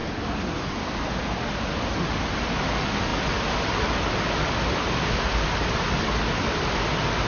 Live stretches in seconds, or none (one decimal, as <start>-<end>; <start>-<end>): 0.0-7.3